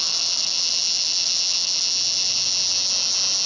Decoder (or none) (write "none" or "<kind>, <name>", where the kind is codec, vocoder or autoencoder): none